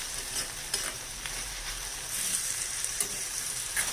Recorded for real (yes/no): no